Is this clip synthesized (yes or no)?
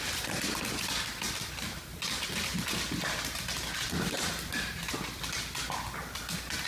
no